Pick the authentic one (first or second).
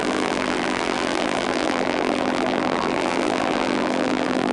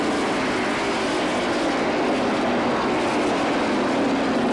second